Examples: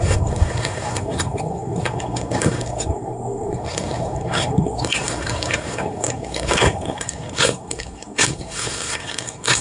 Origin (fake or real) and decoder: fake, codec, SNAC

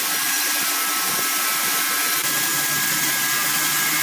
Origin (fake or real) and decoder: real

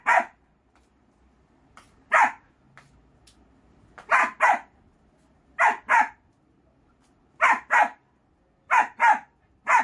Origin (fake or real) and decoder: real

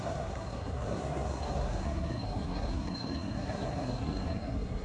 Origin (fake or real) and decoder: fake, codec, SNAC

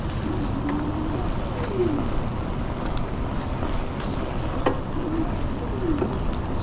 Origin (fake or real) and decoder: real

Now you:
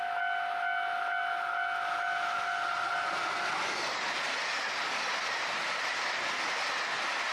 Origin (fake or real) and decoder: real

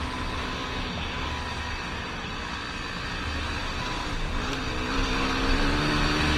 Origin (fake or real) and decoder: real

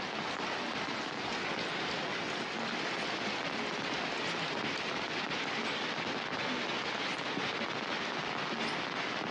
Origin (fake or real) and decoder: real